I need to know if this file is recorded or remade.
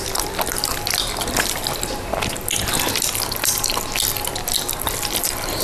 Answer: recorded